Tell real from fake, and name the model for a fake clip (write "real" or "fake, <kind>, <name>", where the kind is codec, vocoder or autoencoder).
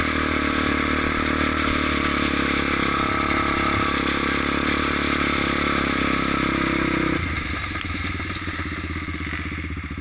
real